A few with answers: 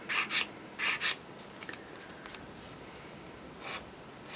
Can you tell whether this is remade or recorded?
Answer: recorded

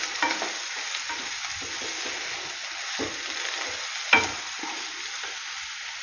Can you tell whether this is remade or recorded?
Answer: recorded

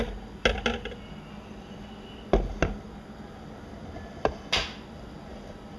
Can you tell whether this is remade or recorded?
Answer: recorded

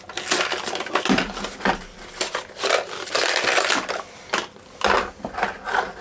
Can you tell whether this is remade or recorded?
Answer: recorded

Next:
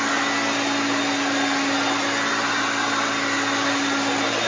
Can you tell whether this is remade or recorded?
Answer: recorded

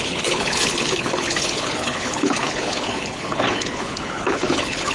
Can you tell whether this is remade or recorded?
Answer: remade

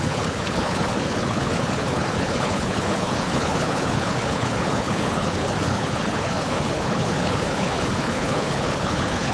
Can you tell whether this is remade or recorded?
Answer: remade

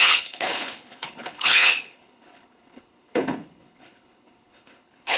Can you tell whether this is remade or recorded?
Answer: remade